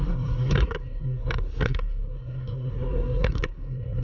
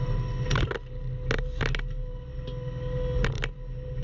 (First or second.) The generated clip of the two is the first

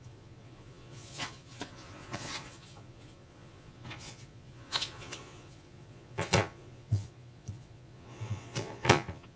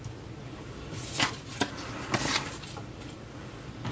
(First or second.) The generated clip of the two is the first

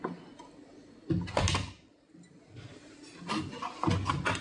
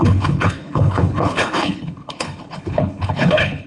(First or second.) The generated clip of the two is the second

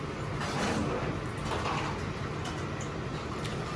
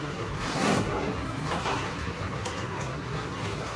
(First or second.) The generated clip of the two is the second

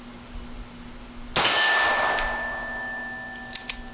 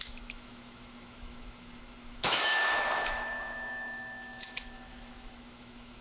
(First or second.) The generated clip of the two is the second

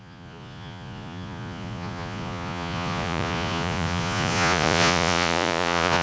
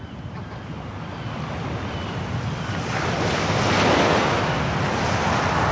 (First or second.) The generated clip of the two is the first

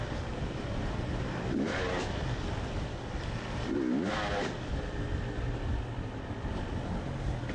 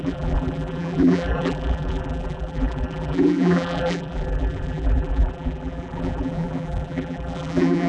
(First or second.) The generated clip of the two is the second